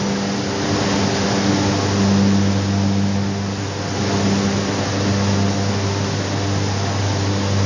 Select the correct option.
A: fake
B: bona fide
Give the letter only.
B